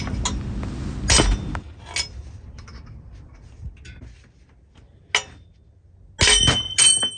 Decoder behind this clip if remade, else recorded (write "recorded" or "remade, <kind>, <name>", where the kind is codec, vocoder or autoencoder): recorded